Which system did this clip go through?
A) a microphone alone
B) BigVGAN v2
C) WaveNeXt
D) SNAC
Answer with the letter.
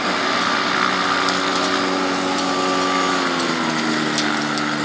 A